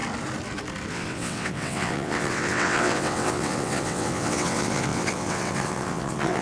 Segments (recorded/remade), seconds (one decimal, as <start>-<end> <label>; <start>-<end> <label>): 0.0-0.9 recorded; 0.9-6.4 remade